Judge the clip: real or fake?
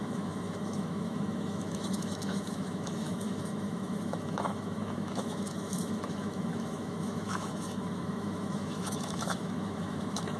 fake